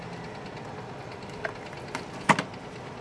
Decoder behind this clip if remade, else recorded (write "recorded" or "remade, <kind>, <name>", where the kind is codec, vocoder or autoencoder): recorded